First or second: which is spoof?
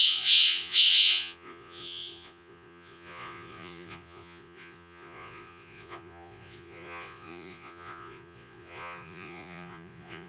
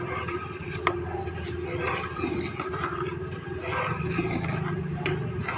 first